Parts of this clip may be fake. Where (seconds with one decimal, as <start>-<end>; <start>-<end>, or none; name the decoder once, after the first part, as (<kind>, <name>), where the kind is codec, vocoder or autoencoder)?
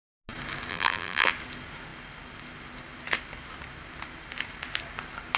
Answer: 0.7-1.3 (vocoder, BigVGAN v2)